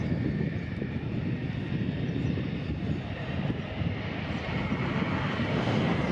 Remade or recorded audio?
recorded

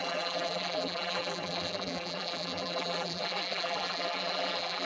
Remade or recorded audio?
remade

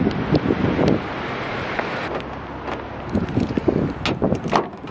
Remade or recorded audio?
recorded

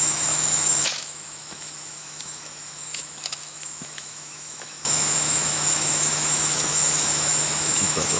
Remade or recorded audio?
remade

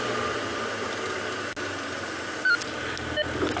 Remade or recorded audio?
recorded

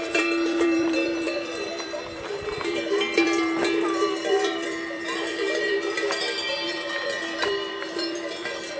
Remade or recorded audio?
remade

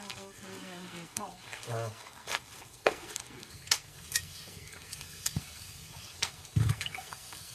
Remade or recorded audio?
remade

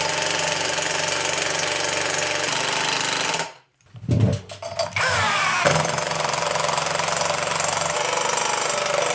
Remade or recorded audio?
recorded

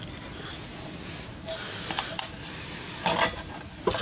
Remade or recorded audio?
recorded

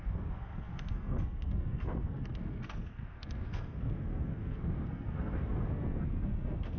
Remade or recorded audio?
remade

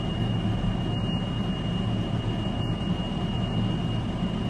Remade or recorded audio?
recorded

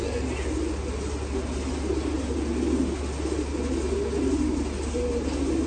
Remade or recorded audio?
recorded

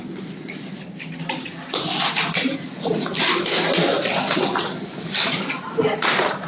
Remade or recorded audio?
recorded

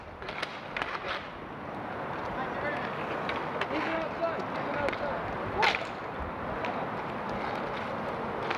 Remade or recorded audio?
recorded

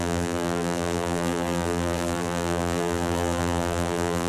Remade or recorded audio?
remade